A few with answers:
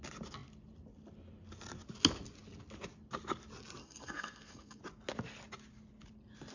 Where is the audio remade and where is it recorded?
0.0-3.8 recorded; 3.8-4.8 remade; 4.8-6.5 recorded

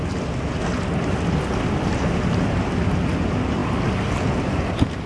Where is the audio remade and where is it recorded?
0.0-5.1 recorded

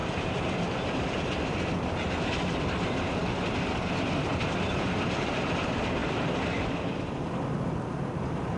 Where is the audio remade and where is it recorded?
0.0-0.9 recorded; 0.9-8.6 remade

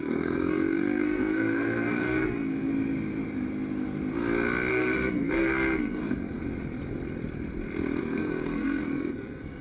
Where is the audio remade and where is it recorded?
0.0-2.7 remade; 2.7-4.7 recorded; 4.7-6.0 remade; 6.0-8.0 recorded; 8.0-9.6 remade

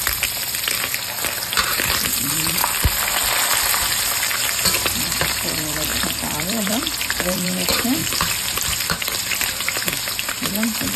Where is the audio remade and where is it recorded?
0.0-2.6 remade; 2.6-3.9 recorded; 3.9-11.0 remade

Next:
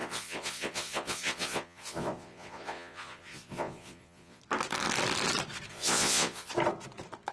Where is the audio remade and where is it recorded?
0.0-4.4 remade; 4.4-5.7 recorded; 5.7-6.5 remade; 6.5-7.3 recorded